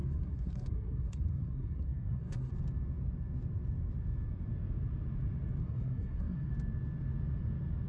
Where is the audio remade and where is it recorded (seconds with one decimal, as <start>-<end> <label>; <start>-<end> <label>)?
0.0-2.5 remade; 2.5-5.6 recorded; 5.6-6.5 remade; 6.5-7.9 recorded